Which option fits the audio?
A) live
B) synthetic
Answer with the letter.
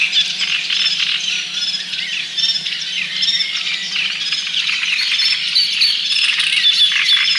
A